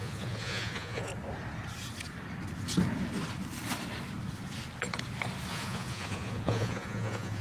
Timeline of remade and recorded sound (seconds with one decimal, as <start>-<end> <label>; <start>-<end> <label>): 0.0-1.1 remade; 1.1-5.5 recorded; 5.5-7.4 remade